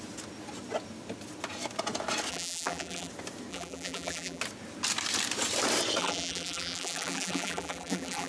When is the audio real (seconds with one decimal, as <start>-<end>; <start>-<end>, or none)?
0.0-2.3; 3.1-3.5; 4.4-6.0